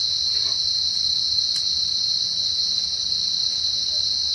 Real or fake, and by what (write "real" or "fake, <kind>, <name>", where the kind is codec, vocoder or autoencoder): real